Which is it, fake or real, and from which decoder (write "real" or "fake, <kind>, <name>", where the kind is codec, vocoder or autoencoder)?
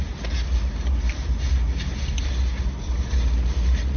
real